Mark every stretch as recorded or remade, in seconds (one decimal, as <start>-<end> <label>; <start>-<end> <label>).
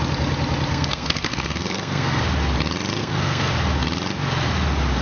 0.0-0.7 recorded; 0.7-2.2 remade; 2.2-3.0 recorded; 3.0-3.5 remade; 3.5-5.0 recorded